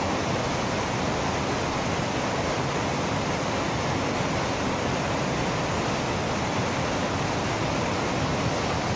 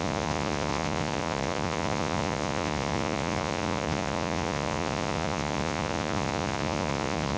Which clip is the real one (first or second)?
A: first